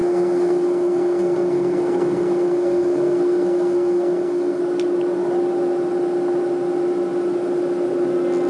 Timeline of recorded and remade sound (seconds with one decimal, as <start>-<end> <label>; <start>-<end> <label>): 0.0-4.6 remade; 4.6-8.5 recorded